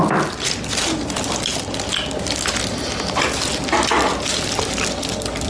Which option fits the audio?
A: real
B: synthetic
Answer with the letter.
A